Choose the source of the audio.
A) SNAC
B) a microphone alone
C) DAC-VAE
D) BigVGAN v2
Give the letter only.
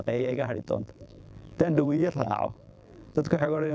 D